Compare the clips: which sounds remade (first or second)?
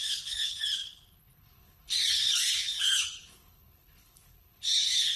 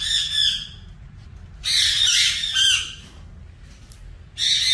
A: first